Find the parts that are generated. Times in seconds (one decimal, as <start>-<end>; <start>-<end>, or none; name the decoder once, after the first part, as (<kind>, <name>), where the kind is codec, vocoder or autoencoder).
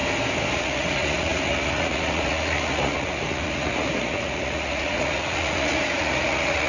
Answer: 0.5-6.7 (vocoder, Vocos)